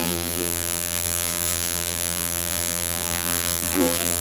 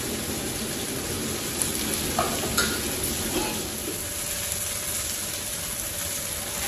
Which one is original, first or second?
second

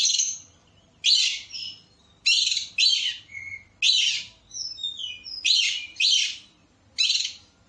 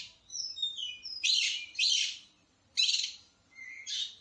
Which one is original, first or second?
first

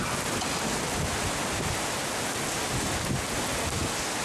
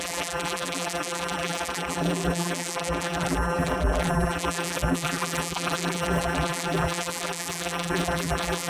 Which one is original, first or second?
first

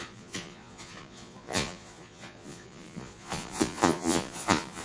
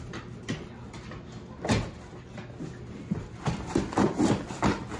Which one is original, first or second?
second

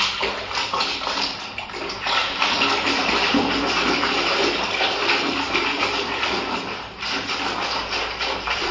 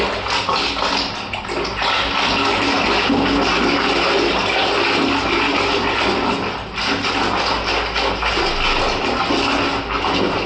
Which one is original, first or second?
second